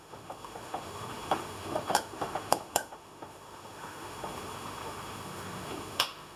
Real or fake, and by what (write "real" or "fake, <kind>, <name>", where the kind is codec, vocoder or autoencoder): fake, autoencoder, DAC-VAE